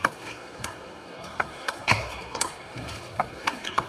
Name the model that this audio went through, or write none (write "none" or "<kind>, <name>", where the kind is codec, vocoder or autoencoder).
codec, SNAC